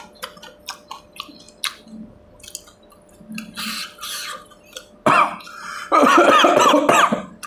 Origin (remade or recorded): recorded